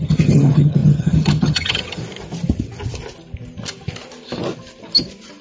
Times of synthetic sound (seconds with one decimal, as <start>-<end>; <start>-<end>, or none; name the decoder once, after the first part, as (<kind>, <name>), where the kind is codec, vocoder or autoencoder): 0.0-2.0 (vocoder, HiFi-GAN)